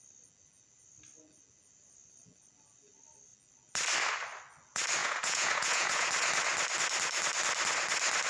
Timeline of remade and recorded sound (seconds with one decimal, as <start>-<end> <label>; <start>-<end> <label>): 0.0-5.0 recorded; 5.0-6.1 remade; 6.1-8.3 recorded